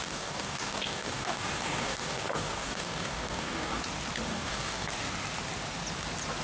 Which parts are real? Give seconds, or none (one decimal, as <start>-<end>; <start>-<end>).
3.8-4.3; 4.9-6.4